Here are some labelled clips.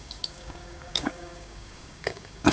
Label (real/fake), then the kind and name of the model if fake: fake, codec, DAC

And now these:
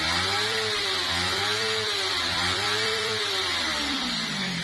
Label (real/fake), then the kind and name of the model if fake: fake, vocoder, BigVGAN v2